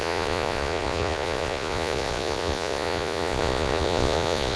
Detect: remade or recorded remade